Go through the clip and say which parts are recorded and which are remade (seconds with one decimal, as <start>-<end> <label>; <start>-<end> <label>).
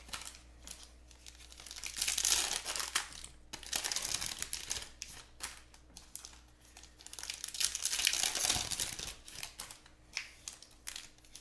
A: 0.0-11.4 recorded